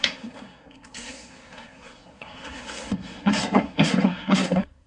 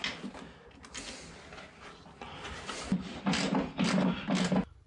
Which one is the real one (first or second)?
second